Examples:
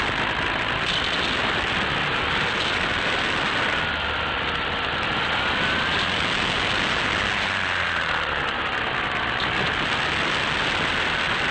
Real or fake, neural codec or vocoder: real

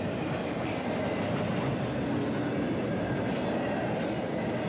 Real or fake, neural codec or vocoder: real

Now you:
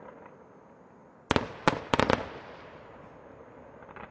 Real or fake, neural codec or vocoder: real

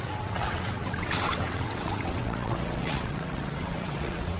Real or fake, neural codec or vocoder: fake, vocoder, WaveNeXt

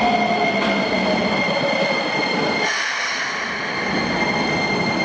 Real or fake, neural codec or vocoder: real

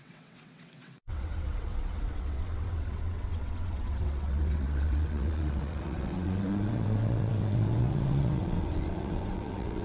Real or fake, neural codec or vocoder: fake, vocoder, WaveNeXt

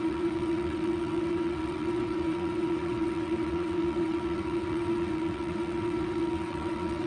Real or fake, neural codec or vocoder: fake, vocoder, WaveNeXt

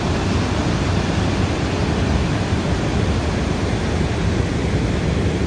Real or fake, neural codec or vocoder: real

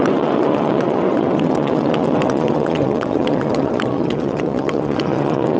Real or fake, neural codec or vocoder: fake, vocoder, WaveNeXt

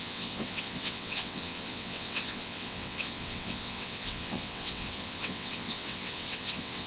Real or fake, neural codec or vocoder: fake, vocoder, WaveNeXt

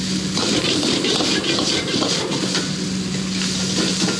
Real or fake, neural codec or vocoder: real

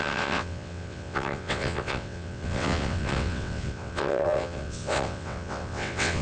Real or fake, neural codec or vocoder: fake, vocoder, WaveNeXt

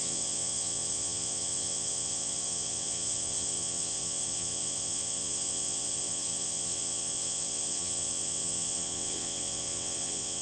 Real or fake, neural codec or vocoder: fake, vocoder, WaveNeXt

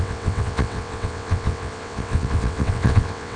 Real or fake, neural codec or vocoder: fake, vocoder, WaveNeXt